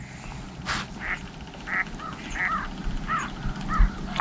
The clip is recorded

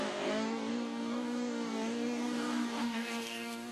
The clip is remade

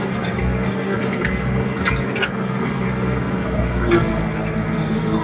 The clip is remade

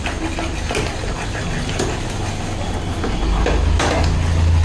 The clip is recorded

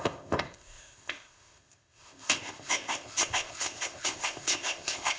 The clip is remade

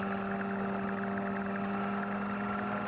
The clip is recorded